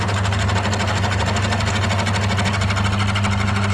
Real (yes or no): yes